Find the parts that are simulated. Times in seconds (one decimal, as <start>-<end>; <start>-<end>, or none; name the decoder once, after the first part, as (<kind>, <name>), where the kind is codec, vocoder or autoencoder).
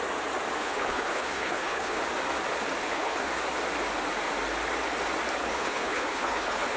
0.6-2.0 (codec, HILCodec); 2.8-3.3; 5.4-6.8